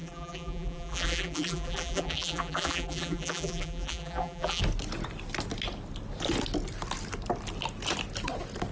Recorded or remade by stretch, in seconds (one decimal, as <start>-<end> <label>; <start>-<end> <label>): 0.0-4.6 remade; 4.6-8.7 recorded